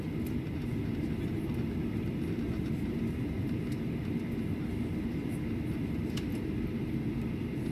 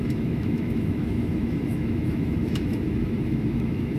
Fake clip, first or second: second